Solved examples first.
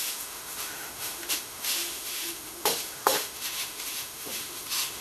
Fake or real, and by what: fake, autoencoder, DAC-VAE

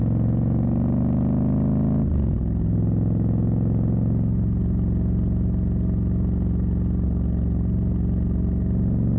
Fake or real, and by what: real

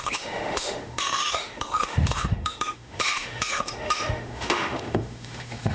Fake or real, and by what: fake, autoencoder, DAC-VAE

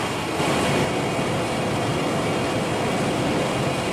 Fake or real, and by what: real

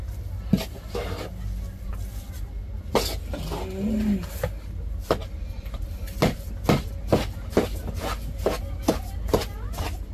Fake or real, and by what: real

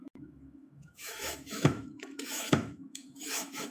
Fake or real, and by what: fake, autoencoder, DAC-VAE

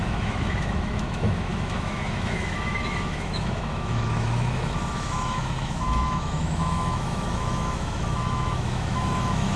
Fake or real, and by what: fake, autoencoder, DAC-VAE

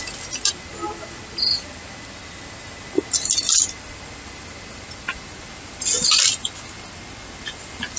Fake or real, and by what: real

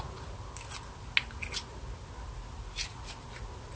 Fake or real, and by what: real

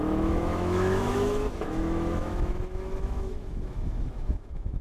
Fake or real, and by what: fake, autoencoder, DAC-VAE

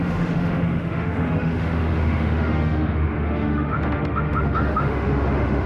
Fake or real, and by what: fake, autoencoder, DAC-VAE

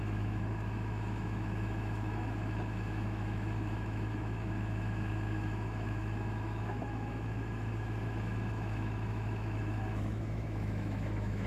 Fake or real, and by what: fake, autoencoder, DAC-VAE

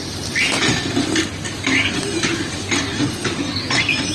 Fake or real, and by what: real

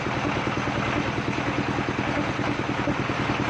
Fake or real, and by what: real